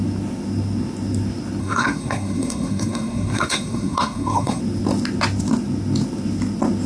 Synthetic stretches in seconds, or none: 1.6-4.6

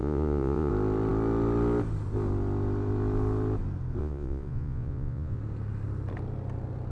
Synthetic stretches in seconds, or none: 0.0-0.7; 4.0-5.4

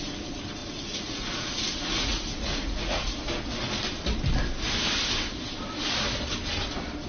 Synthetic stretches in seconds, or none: 0.6-3.1

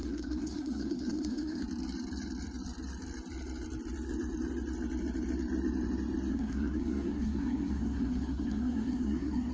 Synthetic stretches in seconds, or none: 0.0-1.6; 6.3-9.5

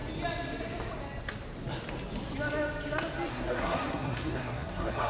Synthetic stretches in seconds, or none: 3.3-5.1